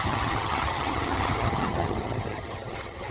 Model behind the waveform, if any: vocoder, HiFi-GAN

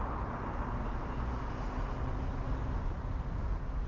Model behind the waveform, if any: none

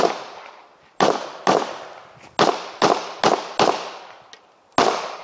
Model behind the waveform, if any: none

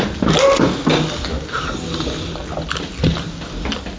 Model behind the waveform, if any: none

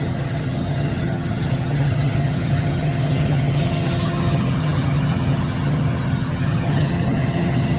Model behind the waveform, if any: vocoder, HiFi-GAN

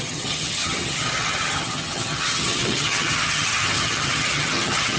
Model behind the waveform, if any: vocoder, HiFi-GAN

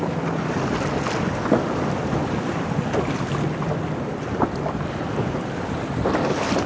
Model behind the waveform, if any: none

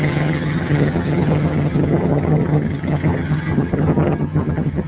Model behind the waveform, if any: vocoder, HiFi-GAN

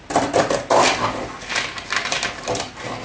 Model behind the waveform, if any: none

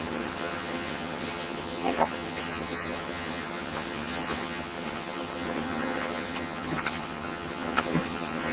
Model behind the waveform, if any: vocoder, HiFi-GAN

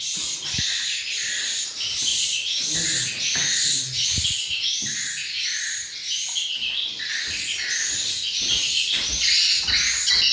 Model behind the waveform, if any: none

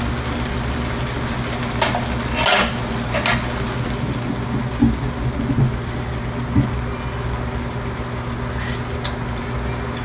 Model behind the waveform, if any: none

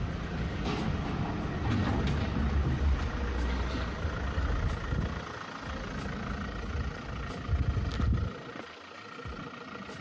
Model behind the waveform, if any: none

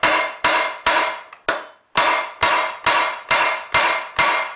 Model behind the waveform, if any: none